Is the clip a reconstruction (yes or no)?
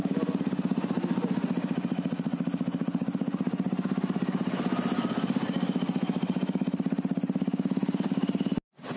no